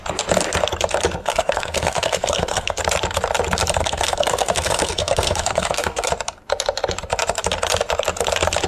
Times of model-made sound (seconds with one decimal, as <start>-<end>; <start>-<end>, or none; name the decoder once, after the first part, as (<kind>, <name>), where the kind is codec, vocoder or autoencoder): 1.2-2.8 (codec, SNAC); 3.8-6.1